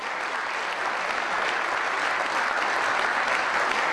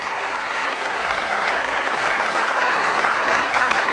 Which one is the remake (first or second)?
second